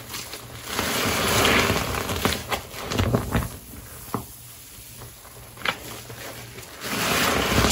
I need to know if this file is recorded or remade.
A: recorded